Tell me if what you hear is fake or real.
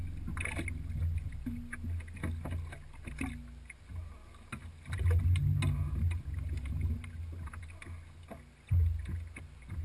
real